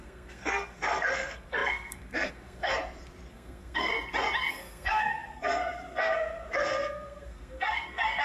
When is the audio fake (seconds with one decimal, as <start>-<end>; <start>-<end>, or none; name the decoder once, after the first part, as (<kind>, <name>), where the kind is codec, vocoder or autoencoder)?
0.0-2.7 (codec, SNAC); 3.3-3.9; 4.5-8.2